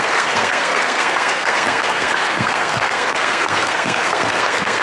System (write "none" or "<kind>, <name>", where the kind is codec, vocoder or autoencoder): codec, SNAC